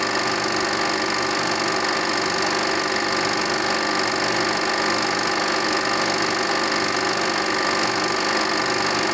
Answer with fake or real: real